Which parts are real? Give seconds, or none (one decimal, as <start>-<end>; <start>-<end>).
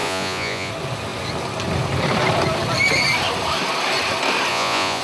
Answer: 0.7-4.5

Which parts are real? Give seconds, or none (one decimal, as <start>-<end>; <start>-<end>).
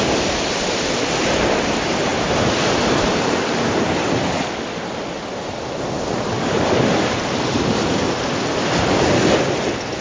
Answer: 0.0-10.0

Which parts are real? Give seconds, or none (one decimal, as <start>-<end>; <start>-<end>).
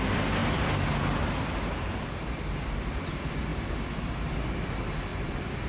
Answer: 3.5-4.6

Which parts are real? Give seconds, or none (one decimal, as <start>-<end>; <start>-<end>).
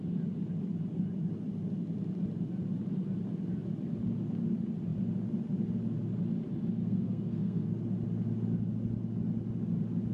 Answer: 0.0-6.8; 7.7-10.1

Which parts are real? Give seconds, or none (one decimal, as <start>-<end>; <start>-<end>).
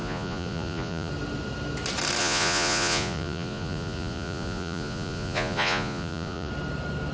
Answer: 1.1-2.2; 6.5-7.1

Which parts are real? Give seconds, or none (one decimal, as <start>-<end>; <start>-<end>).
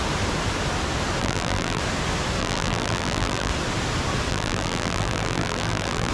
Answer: 0.0-1.2; 1.8-2.4; 3.5-4.3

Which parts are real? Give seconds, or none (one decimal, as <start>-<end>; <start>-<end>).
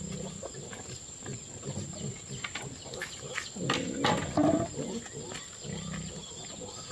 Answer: 0.0-6.9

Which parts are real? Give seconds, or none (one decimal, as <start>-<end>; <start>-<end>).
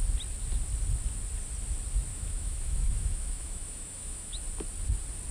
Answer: 0.0-2.1; 4.4-5.3